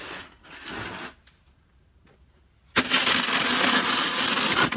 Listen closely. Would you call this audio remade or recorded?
recorded